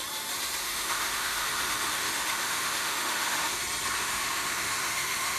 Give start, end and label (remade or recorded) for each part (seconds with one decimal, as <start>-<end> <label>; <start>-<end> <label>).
0.0-0.6 recorded; 0.6-3.6 remade; 3.6-4.0 recorded; 4.0-5.4 remade